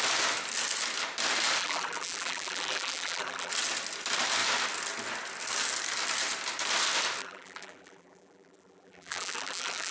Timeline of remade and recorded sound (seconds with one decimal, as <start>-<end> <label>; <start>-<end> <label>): 0.0-1.6 recorded; 1.6-3.5 remade; 3.5-7.2 recorded; 7.2-9.9 remade